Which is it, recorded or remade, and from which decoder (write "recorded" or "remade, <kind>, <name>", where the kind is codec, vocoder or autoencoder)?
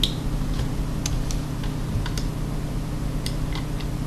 recorded